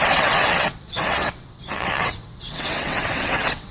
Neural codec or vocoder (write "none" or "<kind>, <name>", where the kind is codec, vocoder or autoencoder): vocoder, WaveNeXt